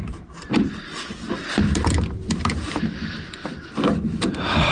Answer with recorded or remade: recorded